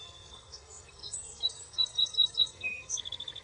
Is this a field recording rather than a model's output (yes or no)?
no